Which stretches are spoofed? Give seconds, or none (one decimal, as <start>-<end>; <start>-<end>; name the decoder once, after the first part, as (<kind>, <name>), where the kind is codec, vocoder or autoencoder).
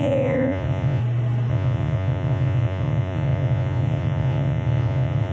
0.0-1.0 (vocoder, Vocos); 1.5-5.3